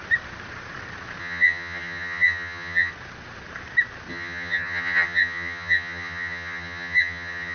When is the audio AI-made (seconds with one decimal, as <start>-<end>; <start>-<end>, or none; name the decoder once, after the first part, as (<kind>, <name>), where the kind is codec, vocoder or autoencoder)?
1.2-2.9 (vocoder, HiFi-GAN); 4.1-7.5

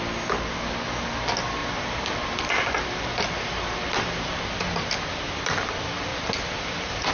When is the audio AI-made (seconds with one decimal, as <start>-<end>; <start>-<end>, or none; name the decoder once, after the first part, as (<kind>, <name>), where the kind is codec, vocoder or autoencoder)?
1.6-4.4 (vocoder, BigVGAN v2); 6.1-7.1

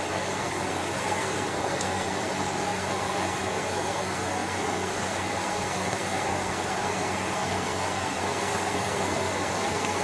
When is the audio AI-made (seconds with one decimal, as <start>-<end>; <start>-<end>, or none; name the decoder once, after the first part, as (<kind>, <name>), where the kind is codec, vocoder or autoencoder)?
0.0-10.0 (codec, SNAC)

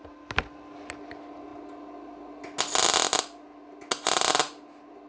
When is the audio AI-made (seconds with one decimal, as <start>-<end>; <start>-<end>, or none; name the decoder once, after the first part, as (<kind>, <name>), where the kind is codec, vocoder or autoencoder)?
none